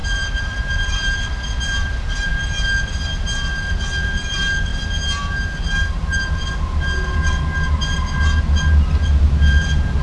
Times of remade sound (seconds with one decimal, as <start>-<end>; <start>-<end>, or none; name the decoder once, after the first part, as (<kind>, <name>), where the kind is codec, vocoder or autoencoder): 0.0-2.3 (vocoder, BigVGAN v2); 3.2-4.7; 9.4-10.0